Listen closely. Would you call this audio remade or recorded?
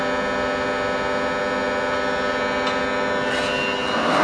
recorded